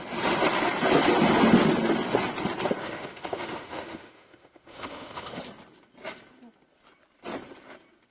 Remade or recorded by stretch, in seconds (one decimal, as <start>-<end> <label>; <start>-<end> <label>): 0.0-2.8 recorded; 2.8-5.4 remade; 5.4-8.1 recorded